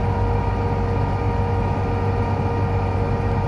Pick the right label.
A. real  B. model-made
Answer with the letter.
A